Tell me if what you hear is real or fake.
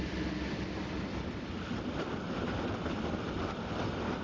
real